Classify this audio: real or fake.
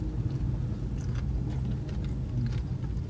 real